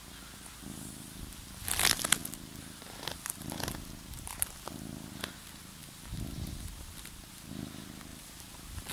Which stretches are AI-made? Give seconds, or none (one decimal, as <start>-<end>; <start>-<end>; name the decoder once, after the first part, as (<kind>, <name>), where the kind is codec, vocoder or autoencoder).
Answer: 2.2-4.1 (vocoder, BigVGAN v2); 8.1-8.9